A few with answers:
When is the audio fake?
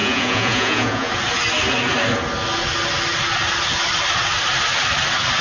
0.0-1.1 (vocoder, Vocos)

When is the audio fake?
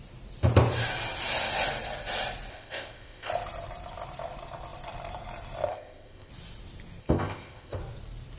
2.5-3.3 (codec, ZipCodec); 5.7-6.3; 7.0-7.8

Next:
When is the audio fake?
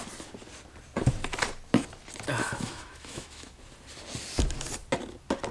2.4-3.6 (autoencoder, DAC-VAE)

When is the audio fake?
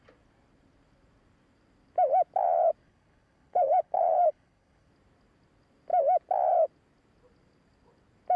2.8-4.9 (codec, HILCodec)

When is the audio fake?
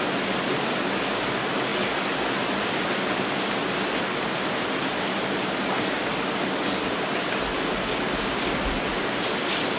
none